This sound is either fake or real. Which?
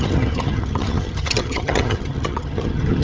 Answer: fake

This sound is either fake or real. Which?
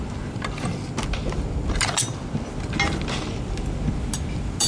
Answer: real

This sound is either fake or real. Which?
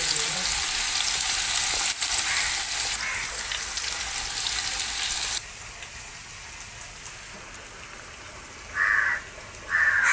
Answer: real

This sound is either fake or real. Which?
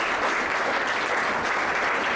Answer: real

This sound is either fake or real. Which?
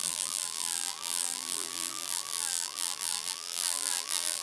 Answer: fake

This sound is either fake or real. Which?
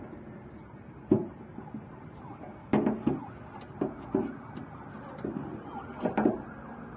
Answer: real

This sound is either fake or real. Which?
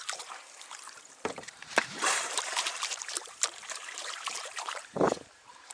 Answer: fake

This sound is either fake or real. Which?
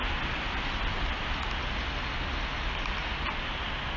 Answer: real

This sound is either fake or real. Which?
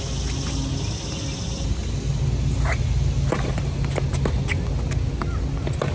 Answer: real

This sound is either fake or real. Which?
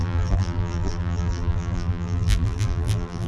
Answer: fake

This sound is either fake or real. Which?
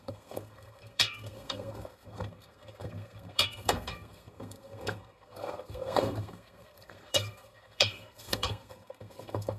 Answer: fake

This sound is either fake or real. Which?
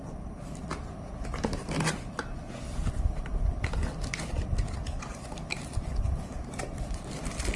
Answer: real